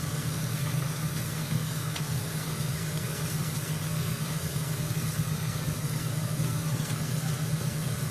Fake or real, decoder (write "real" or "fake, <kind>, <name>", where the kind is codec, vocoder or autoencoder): fake, codec, SNAC